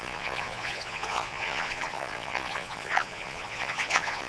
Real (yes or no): no